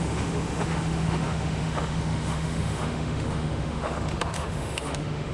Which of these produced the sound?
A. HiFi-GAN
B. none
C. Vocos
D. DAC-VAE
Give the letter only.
D